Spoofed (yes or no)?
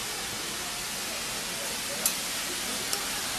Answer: no